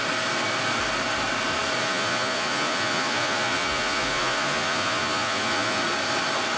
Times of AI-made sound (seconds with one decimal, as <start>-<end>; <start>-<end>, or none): 1.8-5.8